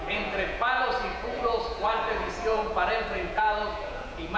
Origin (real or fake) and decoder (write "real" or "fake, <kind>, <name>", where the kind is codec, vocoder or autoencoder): fake, vocoder, Vocos